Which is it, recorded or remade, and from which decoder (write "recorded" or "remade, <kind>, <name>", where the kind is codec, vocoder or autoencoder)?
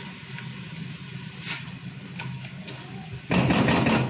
recorded